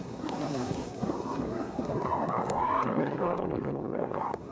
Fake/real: fake